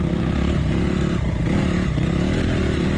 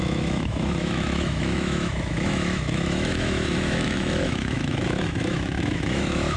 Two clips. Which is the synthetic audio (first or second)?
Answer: second